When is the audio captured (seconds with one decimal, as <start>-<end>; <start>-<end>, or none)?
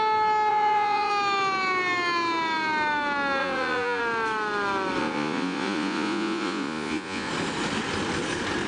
0.0-0.5; 1.1-3.4; 4.0-5.0; 7.3-8.7